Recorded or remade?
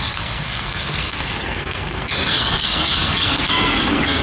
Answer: remade